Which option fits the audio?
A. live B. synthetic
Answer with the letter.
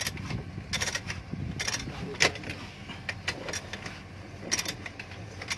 A